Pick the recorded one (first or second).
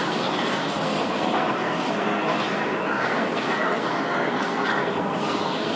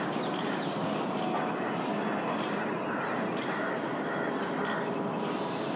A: second